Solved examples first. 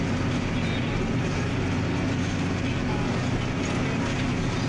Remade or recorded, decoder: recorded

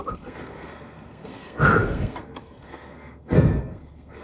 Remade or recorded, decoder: remade, codec, SNAC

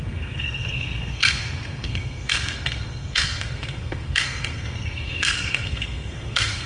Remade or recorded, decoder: remade, codec, SNAC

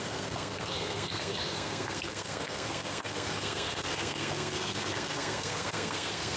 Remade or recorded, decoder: remade, codec, SNAC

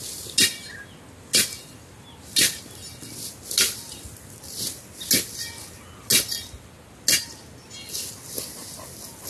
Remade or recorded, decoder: recorded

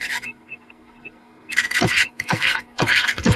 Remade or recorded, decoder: remade, codec, SNAC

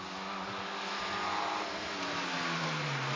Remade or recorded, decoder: recorded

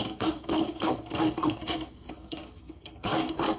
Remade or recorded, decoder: remade, codec, SNAC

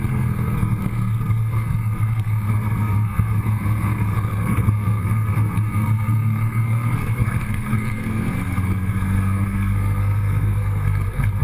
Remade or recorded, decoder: remade, codec, SNAC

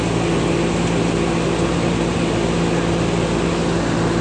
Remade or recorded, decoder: recorded